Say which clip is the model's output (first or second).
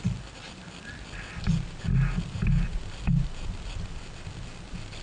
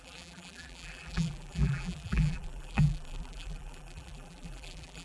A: second